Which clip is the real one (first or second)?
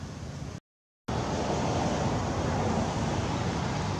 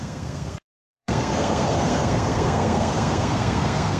first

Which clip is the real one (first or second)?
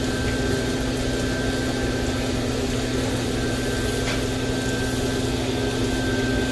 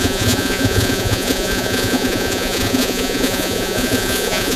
first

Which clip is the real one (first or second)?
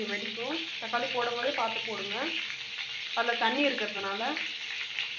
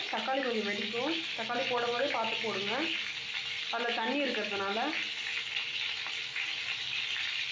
second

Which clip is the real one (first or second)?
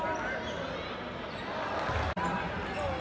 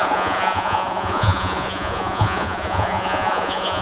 first